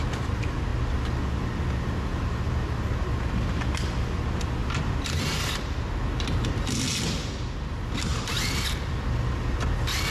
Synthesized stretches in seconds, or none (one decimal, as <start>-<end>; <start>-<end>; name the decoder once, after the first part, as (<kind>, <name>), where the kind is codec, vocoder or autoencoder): 4.6-5.9 (vocoder, BigVGAN v2); 8.1-9.6